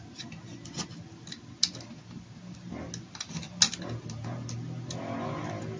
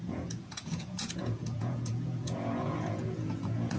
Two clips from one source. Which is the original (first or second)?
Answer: first